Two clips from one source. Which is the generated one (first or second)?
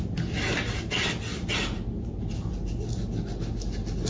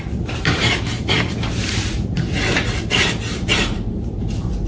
second